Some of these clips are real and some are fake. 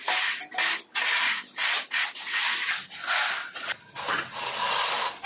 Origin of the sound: real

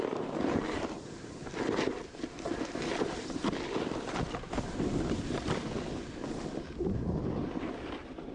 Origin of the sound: real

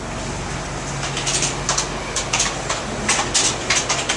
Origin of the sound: real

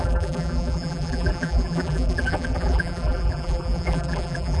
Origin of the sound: fake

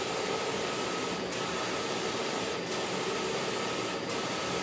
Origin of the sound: real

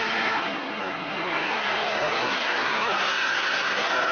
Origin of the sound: fake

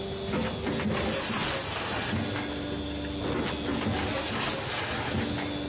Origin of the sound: real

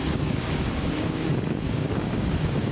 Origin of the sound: fake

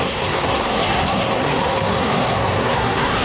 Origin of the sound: fake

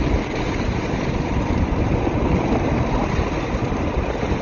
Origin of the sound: real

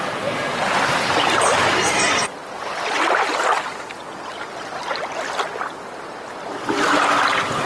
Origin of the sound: real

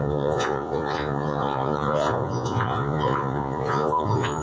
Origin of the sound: fake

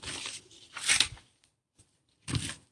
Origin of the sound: real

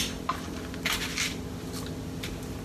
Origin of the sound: real